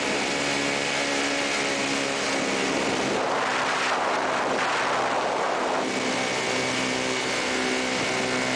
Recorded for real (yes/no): yes